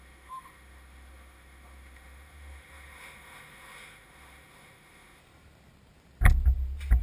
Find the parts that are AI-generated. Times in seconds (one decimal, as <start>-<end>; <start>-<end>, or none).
0.0-5.2